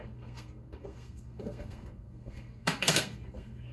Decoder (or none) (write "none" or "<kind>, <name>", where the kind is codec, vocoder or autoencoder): codec, SNAC